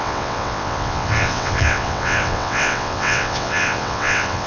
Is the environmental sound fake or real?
fake